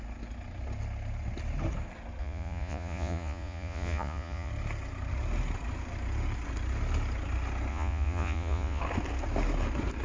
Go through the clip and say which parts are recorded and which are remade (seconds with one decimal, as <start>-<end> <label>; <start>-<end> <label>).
0.0-2.2 recorded; 2.2-4.5 remade; 4.5-7.7 recorded; 7.7-8.8 remade; 8.8-10.0 recorded

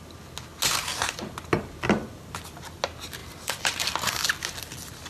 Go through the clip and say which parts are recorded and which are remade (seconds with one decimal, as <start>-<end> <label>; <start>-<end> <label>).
0.0-3.2 recorded; 3.2-4.3 remade; 4.3-5.1 recorded

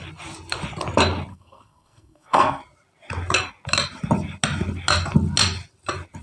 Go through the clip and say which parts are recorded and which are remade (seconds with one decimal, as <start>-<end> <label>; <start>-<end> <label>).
0.0-1.3 recorded; 1.3-2.6 remade; 2.6-6.2 recorded